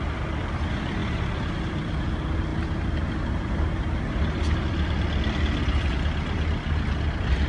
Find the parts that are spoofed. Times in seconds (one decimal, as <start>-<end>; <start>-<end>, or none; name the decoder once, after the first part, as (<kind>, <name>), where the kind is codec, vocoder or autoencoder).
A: none

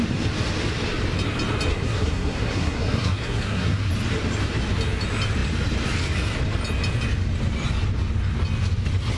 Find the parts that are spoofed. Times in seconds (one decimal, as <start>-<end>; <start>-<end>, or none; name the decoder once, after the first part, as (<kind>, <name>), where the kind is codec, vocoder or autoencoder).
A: 1.7-3.9 (codec, SNAC)

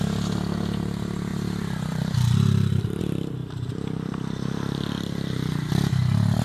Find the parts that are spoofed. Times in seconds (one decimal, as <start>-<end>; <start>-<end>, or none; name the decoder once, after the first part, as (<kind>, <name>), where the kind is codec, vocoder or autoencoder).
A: 1.3-3.0 (vocoder, BigVGAN v2); 3.4-4.9

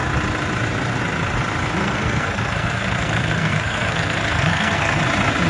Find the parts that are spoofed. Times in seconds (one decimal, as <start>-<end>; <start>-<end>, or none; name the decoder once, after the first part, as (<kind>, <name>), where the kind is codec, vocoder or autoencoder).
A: 1.8-5.0 (codec, SNAC)

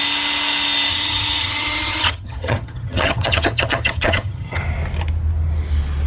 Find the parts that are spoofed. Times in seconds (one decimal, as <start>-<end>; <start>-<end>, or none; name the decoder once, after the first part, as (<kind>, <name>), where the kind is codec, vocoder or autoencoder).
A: 0.9-4.6 (vocoder, HiFi-GAN)

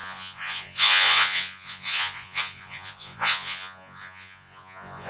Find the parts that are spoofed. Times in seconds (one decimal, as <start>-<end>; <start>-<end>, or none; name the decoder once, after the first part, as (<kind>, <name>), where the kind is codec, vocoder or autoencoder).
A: 0.0-5.1 (vocoder, Vocos)

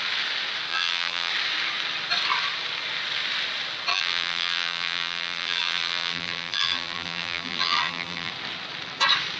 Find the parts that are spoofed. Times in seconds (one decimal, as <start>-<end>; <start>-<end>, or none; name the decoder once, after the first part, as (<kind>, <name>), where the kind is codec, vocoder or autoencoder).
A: 0.7-1.3 (vocoder, BigVGAN v2); 3.9-8.3